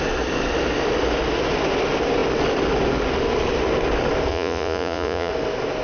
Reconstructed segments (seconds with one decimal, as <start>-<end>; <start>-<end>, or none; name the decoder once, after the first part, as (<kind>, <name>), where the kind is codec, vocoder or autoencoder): 4.3-5.3 (vocoder, Vocos)